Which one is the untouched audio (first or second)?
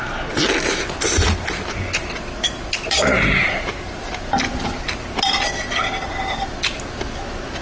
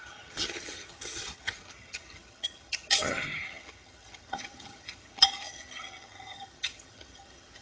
first